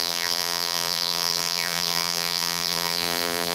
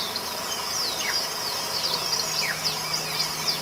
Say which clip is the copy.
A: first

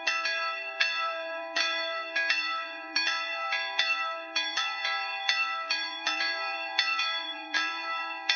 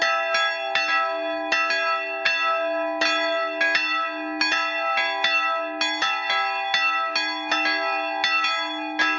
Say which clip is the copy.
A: first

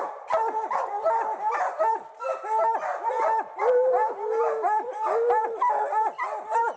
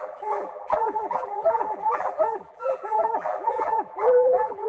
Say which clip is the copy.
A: second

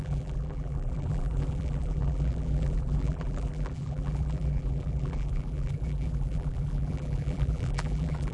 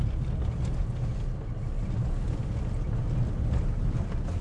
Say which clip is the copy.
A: first